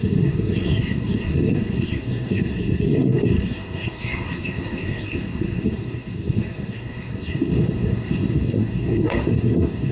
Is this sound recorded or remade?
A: remade